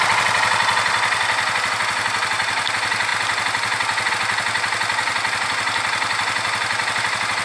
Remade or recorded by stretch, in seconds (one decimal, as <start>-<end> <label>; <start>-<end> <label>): 0.0-7.4 recorded